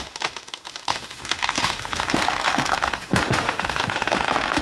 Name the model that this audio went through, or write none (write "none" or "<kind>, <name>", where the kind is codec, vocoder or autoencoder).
autoencoder, DAC-VAE